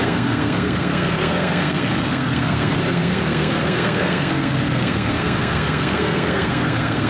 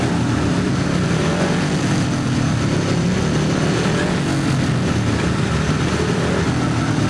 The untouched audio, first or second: second